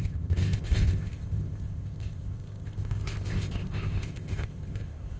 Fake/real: fake